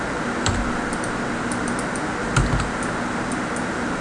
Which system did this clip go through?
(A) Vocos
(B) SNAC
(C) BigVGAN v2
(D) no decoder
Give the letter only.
D